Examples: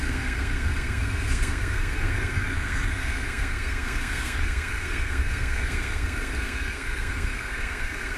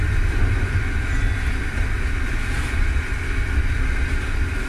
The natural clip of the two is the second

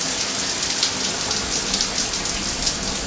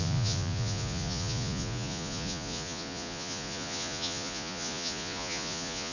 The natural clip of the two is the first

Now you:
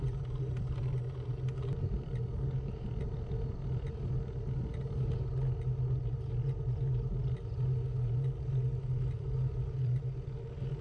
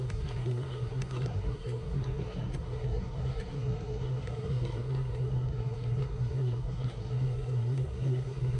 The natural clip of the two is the first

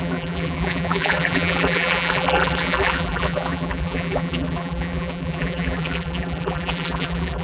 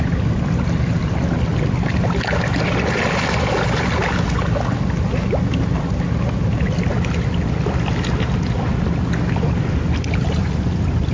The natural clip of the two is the second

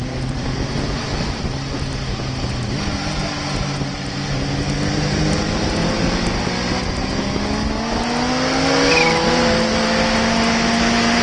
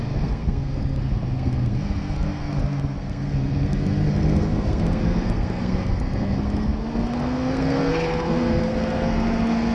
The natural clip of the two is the first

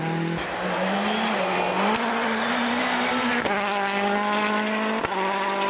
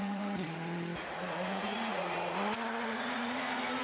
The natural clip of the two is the first